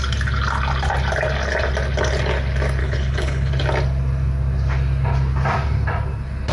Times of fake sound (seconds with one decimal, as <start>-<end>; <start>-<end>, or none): 2.8-3.5